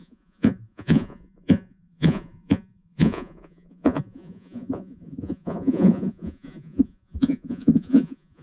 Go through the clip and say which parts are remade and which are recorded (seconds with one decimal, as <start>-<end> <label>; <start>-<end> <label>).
0.0-8.4 remade

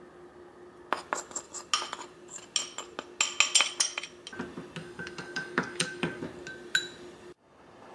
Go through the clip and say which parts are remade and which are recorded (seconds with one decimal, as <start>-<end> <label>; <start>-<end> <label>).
0.0-4.8 recorded; 4.8-6.2 remade; 6.2-7.9 recorded

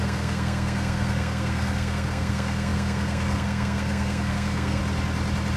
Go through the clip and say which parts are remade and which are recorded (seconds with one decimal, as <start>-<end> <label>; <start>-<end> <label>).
0.0-4.8 remade; 4.8-5.6 recorded

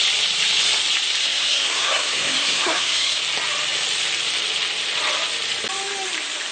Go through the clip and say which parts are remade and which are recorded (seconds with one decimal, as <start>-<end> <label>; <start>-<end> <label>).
0.0-1.2 recorded; 1.2-3.2 remade; 3.2-6.5 recorded

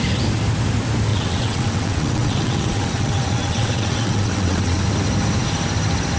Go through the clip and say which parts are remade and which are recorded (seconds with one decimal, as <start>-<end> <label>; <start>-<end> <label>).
0.0-1.1 recorded; 1.1-4.8 remade; 4.8-6.2 recorded

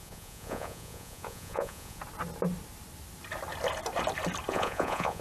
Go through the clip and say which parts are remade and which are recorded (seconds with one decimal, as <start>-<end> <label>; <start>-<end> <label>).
0.0-2.0 remade; 2.0-4.5 recorded; 4.5-5.2 remade

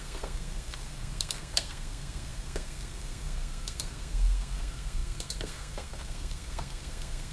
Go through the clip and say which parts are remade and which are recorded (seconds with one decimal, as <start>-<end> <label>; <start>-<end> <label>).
0.0-7.3 remade

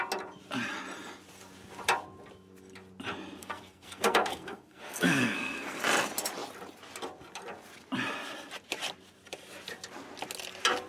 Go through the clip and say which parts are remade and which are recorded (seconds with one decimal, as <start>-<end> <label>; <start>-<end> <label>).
0.0-3.4 recorded; 3.4-5.8 remade; 5.8-10.9 recorded